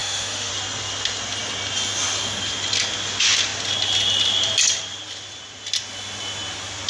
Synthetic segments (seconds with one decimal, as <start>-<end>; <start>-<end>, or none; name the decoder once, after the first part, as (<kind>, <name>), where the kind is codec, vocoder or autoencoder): 0.0-0.5 (autoencoder, DAC-VAE)